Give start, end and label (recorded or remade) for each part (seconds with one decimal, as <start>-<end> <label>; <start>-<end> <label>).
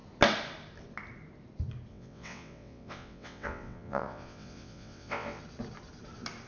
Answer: 0.0-1.9 recorded; 1.9-5.4 remade; 5.4-6.5 recorded